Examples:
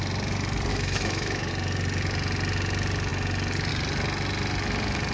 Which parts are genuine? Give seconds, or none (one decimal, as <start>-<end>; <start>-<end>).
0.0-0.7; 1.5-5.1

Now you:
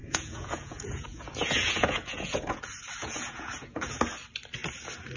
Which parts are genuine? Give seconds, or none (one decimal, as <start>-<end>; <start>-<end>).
2.6-3.0; 4.0-5.2

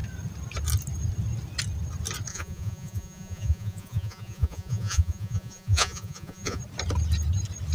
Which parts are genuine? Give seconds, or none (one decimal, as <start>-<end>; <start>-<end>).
0.0-2.3; 6.6-7.7

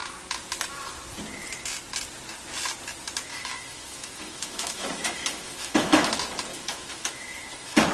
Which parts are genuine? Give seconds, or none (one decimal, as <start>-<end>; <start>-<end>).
0.0-3.3; 6.1-6.5

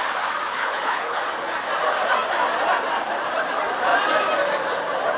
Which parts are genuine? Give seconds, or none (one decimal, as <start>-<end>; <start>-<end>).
0.0-0.5; 1.2-5.2